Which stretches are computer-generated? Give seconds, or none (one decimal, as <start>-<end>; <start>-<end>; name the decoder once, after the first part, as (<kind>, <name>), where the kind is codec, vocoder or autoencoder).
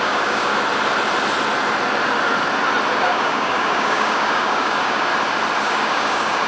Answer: 0.0-0.5 (codec, DAC); 2.9-5.1; 5.6-6.5